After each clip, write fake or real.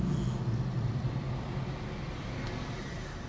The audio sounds real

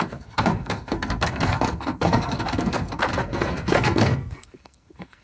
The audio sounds fake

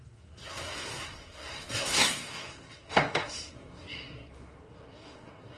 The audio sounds fake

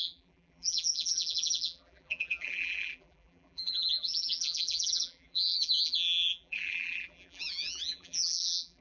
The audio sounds fake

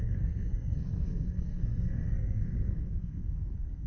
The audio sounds fake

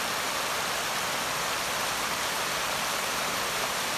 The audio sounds real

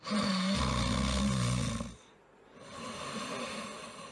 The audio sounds real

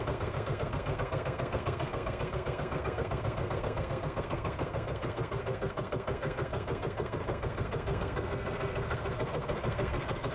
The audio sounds fake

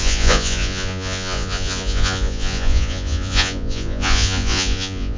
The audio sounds fake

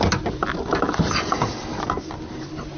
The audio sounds real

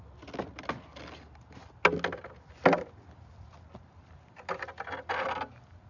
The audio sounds real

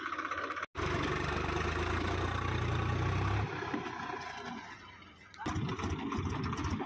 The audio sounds real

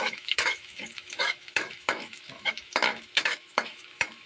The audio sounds fake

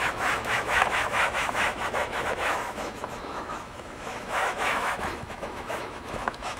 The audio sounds fake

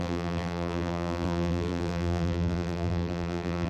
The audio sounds fake